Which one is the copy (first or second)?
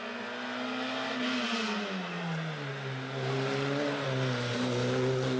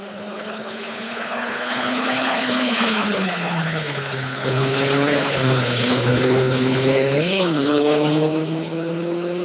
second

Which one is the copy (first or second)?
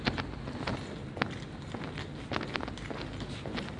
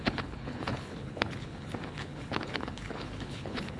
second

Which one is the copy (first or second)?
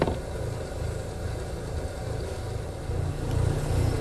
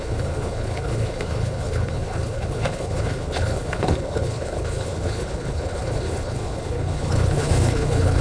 second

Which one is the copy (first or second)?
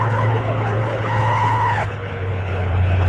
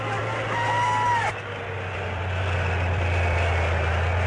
first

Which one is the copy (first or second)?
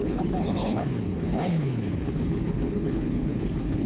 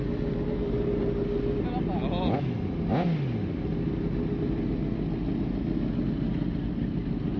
first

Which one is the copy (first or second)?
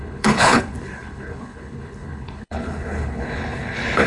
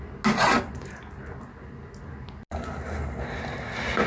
first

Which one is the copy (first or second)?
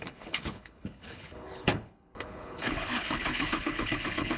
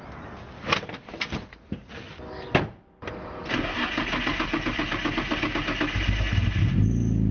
first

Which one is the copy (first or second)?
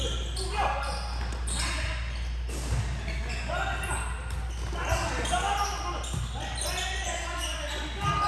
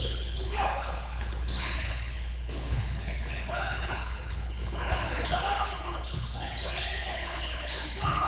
second